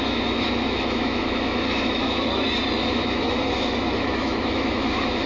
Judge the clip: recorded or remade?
remade